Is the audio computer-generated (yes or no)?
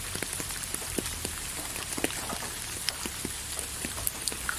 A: yes